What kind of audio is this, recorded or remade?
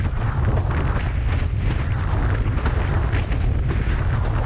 recorded